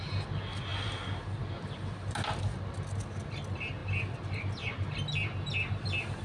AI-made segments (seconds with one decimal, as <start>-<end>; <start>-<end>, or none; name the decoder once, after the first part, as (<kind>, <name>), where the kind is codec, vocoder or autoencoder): none